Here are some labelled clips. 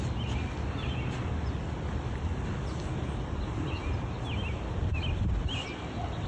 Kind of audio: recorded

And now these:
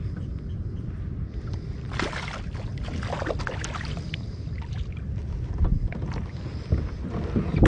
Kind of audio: remade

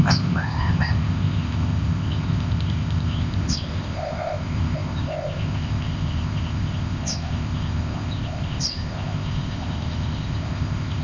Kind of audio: remade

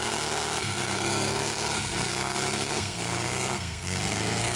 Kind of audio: remade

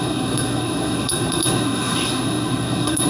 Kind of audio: remade